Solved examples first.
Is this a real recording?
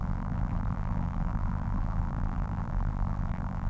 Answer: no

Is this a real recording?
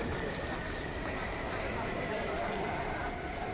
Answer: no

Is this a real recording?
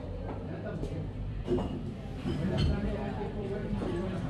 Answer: no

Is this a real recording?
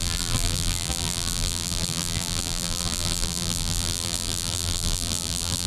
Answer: no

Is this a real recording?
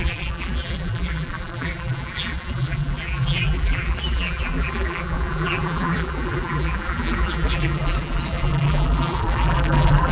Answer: no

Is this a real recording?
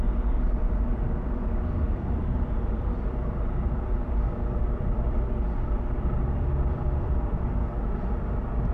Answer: no